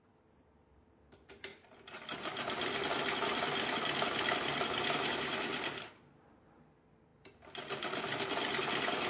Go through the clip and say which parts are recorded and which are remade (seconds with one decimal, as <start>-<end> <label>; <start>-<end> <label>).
0.0-9.1 recorded